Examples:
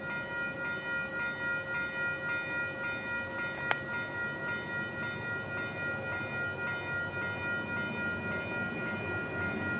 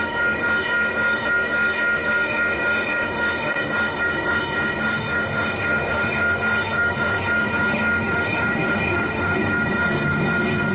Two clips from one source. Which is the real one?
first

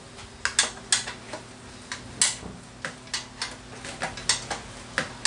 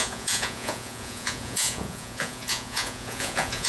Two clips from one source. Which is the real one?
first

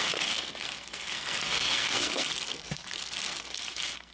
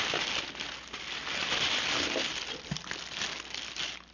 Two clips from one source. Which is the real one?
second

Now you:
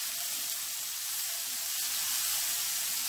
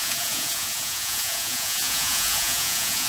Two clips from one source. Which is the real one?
first